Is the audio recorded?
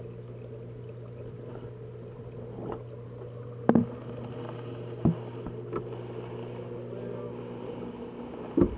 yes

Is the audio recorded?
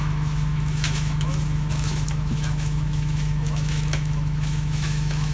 no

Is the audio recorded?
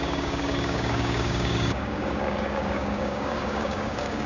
no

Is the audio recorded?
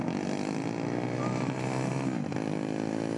yes